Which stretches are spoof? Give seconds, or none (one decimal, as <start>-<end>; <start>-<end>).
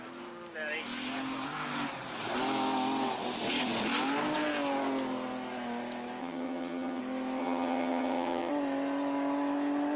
6.2-7.0; 7.4-8.5